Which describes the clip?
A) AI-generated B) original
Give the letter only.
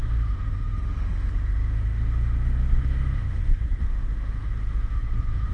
A